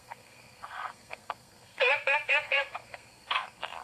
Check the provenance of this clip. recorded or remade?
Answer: remade